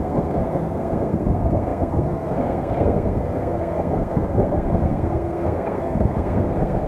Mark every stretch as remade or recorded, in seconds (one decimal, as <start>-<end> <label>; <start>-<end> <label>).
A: 0.0-6.9 remade